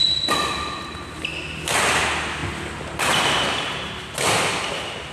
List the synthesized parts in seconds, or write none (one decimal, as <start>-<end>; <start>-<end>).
none